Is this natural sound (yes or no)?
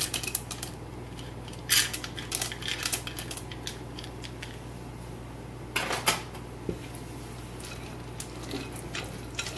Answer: yes